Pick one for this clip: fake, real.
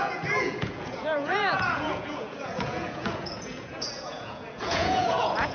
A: fake